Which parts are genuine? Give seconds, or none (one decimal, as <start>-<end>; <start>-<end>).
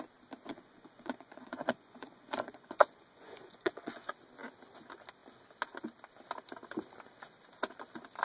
0.0-0.5; 4.1-8.2